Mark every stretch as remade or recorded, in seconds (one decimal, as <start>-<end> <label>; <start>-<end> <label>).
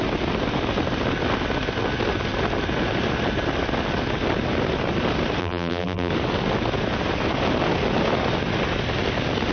0.0-5.4 recorded; 5.4-6.1 remade; 6.1-9.5 recorded